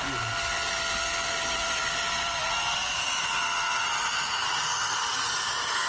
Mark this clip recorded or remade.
recorded